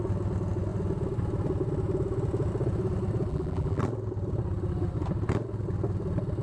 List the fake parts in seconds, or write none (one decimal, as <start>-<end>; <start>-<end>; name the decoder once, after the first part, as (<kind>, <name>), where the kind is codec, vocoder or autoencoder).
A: 3.3-3.8 (vocoder, BigVGAN v2)